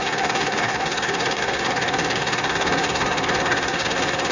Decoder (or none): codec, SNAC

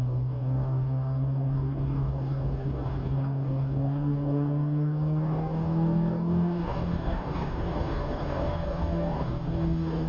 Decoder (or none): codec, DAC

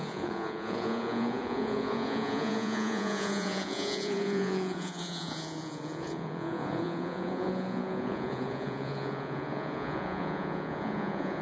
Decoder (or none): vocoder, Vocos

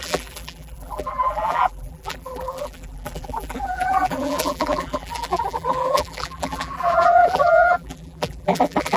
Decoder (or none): vocoder, BigVGAN v2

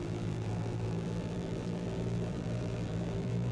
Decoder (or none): vocoder, BigVGAN v2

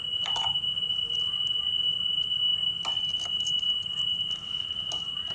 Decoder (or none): none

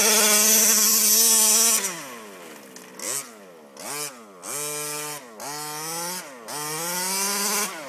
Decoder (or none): none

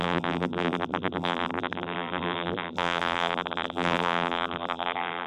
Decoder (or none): vocoder, BigVGAN v2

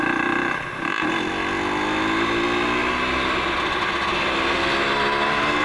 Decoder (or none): none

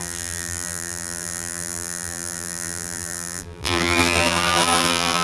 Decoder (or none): vocoder, BigVGAN v2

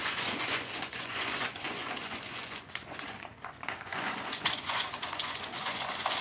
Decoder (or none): vocoder, Vocos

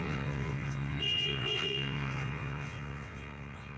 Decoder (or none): vocoder, WaveNeXt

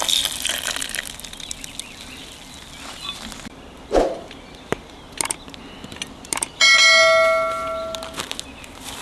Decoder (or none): none